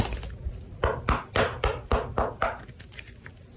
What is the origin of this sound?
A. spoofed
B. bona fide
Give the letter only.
B